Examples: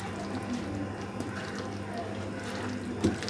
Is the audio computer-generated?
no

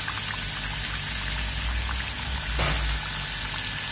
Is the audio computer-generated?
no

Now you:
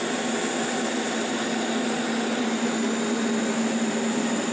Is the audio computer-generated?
no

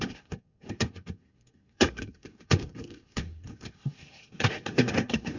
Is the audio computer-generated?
yes